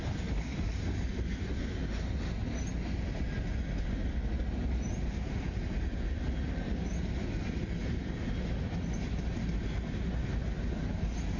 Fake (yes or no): no